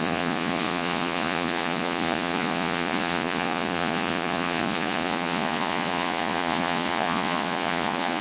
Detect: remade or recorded remade